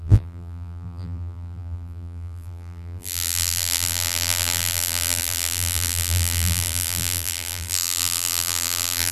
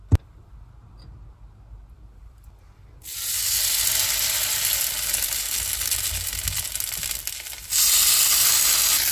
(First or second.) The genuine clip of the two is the second